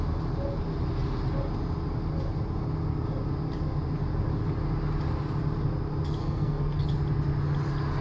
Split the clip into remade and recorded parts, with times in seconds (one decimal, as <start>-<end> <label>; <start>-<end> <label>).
0.0-6.2 recorded; 6.2-6.8 remade; 6.8-8.0 recorded